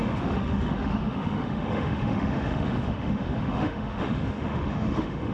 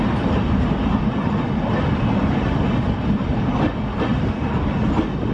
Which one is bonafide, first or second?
second